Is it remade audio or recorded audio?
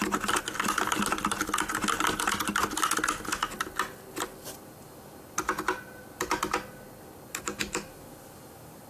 recorded